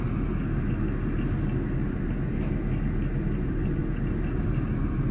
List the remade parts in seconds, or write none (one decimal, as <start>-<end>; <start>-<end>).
none